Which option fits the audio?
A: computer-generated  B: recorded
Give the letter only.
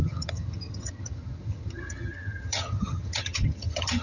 A